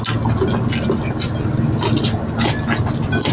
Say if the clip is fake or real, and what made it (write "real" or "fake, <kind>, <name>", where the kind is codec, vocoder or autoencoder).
real